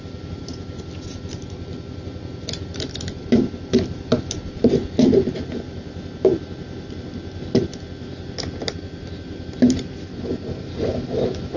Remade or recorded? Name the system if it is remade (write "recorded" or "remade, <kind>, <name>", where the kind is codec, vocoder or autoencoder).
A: recorded